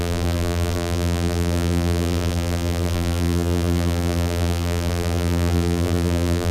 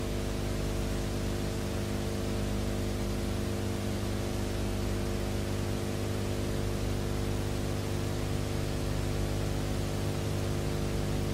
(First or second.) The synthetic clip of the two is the first